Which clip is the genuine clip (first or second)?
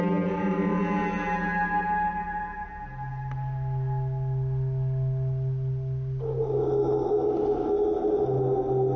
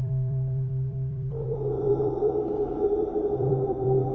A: first